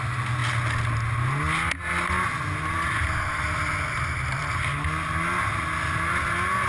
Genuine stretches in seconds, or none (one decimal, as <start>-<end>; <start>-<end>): 0.0-6.7

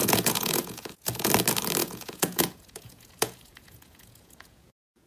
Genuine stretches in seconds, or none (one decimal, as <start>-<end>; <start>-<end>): 1.3-1.8